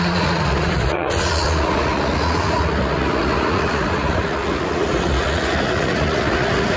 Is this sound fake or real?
fake